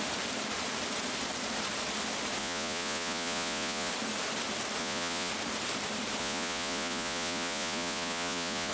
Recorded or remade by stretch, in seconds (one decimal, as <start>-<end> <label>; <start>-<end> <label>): 0.0-2.4 recorded; 2.4-3.9 remade; 3.9-4.8 recorded; 4.8-5.3 remade; 5.3-6.2 recorded; 6.2-8.7 remade